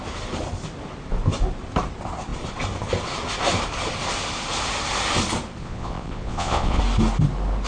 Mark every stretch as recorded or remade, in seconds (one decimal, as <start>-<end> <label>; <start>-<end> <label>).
0.0-5.6 recorded; 5.6-6.8 remade; 6.8-7.7 recorded